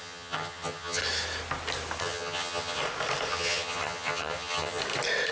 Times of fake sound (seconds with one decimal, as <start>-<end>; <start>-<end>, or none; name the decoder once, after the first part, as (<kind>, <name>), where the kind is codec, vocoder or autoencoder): 0.0-1.0 (vocoder, HiFi-GAN); 2.0-2.8; 3.3-4.8

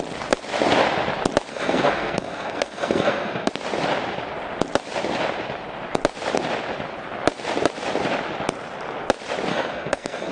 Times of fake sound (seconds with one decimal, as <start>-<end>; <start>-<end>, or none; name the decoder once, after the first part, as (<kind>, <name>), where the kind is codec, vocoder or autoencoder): 1.5-3.5 (codec, SNAC); 9.5-10.3